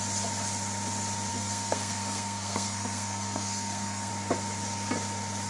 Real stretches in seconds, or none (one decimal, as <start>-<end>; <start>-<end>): 0.0-1.3; 4.1-5.5